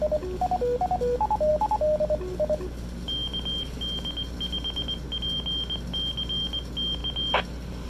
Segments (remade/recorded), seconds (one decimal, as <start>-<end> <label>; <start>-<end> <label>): 0.0-7.9 recorded